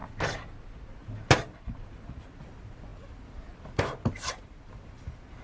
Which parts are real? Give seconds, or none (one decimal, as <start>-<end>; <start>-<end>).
0.0-2.4